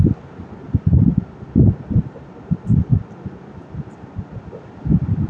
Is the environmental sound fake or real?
real